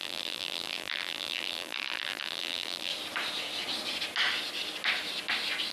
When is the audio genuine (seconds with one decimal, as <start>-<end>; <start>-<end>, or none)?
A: 2.9-5.7